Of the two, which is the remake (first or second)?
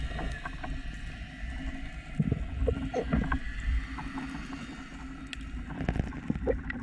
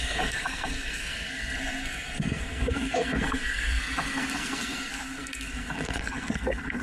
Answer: second